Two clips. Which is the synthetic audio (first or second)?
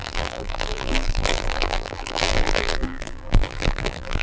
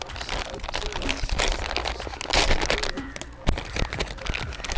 first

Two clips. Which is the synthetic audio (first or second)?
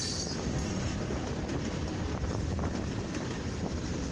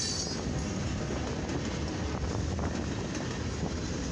first